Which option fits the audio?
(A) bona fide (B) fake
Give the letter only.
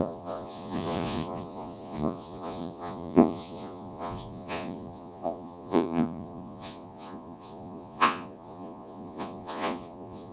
B